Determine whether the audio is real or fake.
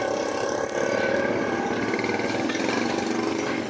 real